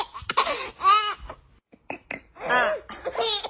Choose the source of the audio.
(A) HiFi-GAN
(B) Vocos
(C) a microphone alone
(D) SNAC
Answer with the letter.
C